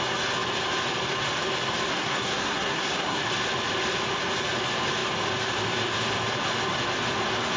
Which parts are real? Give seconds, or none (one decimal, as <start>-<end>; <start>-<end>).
0.0-1.9; 3.3-7.6